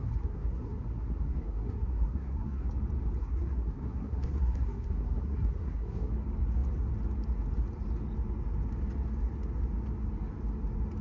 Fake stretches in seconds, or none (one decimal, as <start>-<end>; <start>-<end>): 0.0-2.7; 3.2-6.1